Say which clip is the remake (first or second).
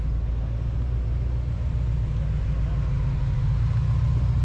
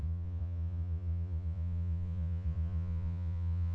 second